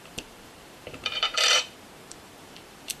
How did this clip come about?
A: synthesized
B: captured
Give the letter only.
A